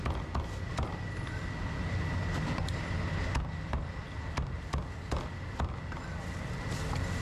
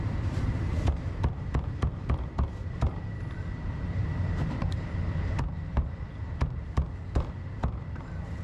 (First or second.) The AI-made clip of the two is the second